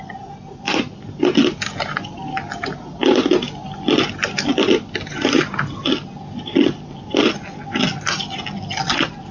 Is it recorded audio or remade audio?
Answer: recorded